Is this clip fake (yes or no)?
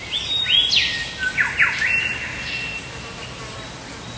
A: no